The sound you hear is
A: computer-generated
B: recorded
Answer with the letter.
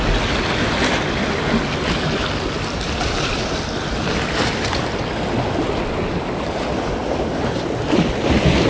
B